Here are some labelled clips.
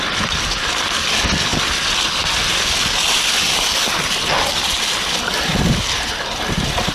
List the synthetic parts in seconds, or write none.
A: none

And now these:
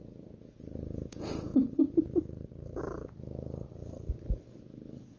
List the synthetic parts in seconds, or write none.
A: 0.0-1.8; 4.6-5.2

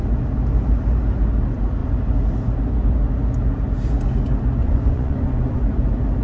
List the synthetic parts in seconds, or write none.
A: 4.6-5.6

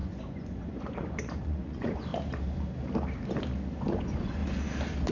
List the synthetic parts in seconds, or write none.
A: 0.0-2.1; 3.7-4.4